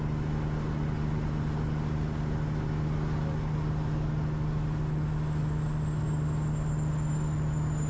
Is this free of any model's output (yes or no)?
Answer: yes